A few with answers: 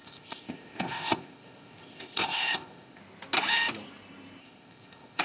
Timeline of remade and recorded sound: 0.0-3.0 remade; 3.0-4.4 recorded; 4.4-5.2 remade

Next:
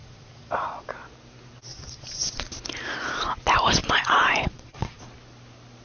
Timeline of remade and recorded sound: 0.0-0.9 remade; 0.9-1.7 recorded; 1.7-2.5 remade; 2.5-3.8 recorded; 3.8-5.0 remade; 5.0-5.8 recorded

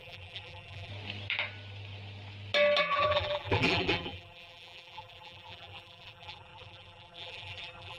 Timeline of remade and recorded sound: 0.0-0.9 remade; 0.9-2.8 recorded; 2.8-8.0 remade

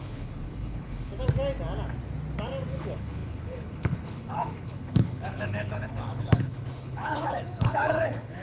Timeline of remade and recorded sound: 0.0-1.1 remade; 1.1-2.7 recorded; 2.7-8.4 remade

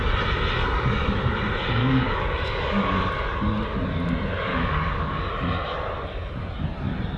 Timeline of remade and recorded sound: 0.0-1.8 recorded; 1.8-3.1 remade; 3.1-4.5 recorded; 4.5-5.3 remade; 5.3-7.2 recorded

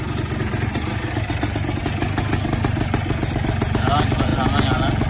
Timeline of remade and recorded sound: 0.0-5.1 recorded

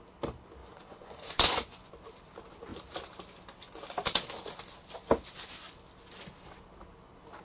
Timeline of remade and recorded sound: 0.0-0.6 recorded; 0.6-1.9 remade; 1.9-7.4 recorded

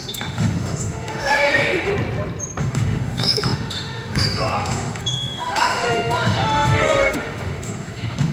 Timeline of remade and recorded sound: 0.0-1.9 remade; 1.9-2.6 recorded; 2.6-8.3 remade